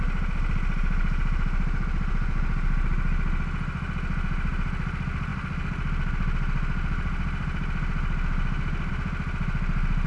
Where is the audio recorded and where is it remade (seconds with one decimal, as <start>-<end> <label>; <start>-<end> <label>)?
0.0-10.1 recorded